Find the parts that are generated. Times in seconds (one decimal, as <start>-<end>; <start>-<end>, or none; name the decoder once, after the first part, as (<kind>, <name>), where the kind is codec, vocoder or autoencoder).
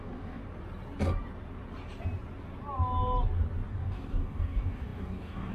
0.0-0.4 (codec, DAC); 3.7-5.5